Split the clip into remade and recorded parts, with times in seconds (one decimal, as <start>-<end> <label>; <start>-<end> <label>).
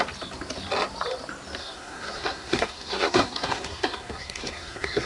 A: 0.0-1.6 recorded; 1.6-5.1 remade